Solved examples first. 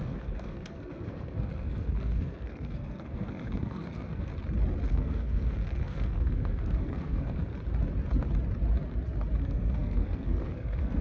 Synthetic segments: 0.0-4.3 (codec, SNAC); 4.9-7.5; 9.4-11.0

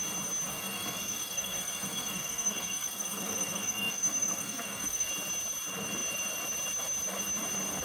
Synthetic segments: 0.5-5.1 (codec, SNAC)

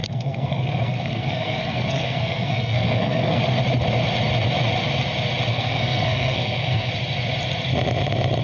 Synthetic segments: 0.0-3.4 (codec, SNAC); 5.5-6.9

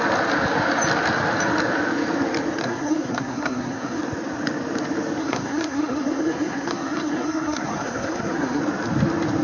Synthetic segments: 2.6-4.0 (codec, SNAC); 5.2-8.6

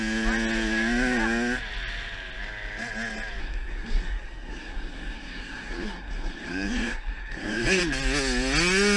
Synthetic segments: 3.4-7.8 (codec, SNAC)

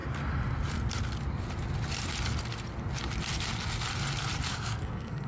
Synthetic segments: 4.5-5.3 (codec, SNAC)

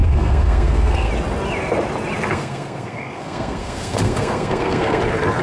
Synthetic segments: 0.0-1.1 (codec, SNAC); 2.3-5.0